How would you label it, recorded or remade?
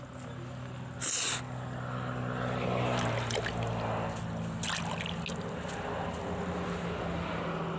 recorded